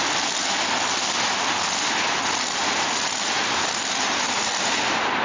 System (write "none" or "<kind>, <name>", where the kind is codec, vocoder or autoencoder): none